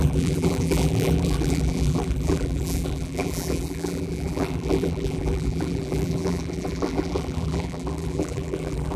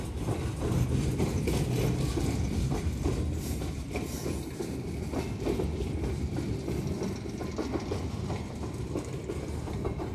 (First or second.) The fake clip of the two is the first